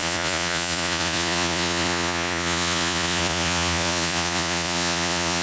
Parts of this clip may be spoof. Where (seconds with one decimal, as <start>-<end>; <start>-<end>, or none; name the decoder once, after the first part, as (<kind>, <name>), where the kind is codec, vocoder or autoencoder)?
0.0-5.4 (vocoder, Vocos)